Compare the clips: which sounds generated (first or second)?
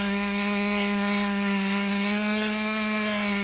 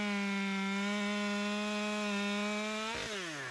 first